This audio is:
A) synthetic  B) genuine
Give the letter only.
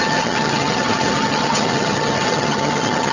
A